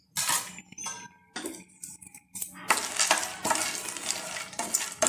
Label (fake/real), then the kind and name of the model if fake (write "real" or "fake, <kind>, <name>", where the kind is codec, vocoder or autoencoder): real